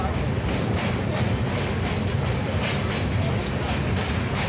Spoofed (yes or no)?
no